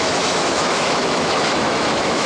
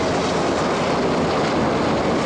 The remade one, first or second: first